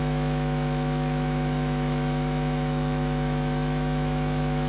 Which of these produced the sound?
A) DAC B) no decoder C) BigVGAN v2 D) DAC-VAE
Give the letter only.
D